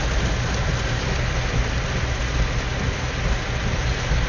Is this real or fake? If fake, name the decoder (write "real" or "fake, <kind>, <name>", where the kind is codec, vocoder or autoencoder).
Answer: real